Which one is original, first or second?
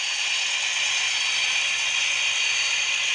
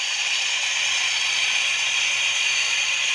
first